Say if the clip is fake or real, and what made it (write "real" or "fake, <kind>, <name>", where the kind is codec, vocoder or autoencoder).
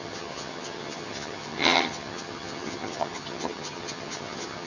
fake, vocoder, HiFi-GAN